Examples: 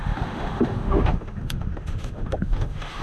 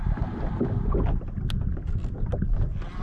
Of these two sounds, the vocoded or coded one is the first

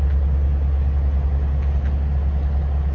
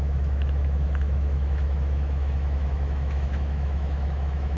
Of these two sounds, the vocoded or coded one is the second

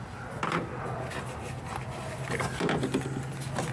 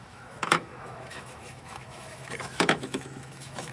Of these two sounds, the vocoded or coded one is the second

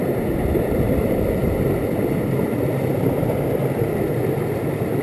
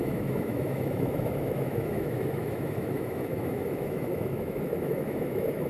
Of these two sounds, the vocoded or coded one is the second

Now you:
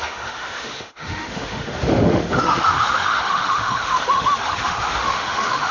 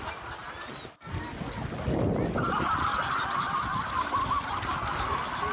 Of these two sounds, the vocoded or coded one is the first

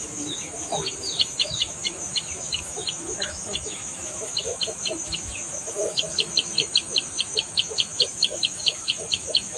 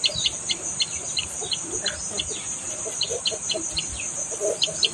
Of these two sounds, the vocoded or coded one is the first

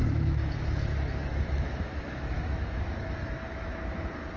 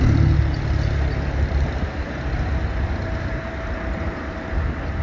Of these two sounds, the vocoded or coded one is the first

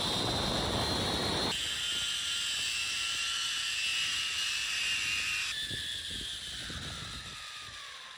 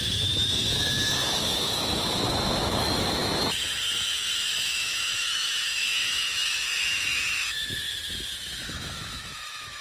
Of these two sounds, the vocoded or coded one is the second